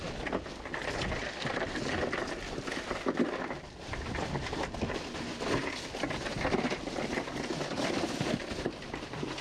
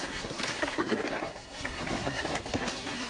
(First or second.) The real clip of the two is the first